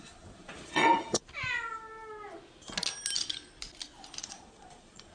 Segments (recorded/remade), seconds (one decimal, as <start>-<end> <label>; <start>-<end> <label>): 0.0-1.2 remade; 1.2-4.2 recorded; 4.2-5.1 remade